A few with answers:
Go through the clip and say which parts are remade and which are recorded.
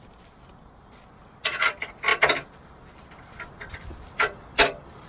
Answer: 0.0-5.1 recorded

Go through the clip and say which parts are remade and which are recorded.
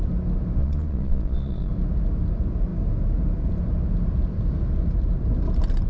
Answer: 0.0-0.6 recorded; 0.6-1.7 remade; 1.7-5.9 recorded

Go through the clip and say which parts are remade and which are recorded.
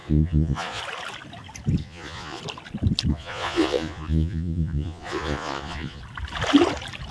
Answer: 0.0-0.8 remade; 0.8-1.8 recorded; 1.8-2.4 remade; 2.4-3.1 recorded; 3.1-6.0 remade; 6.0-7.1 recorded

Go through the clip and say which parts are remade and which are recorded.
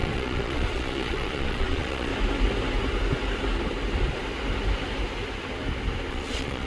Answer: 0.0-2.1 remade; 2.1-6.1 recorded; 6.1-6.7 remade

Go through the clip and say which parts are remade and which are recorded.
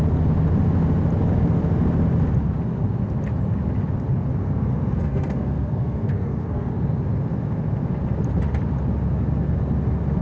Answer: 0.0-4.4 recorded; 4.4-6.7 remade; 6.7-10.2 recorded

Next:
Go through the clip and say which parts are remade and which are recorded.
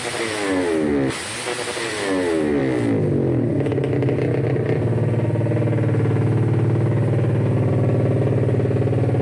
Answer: 0.0-2.6 remade; 2.6-9.2 recorded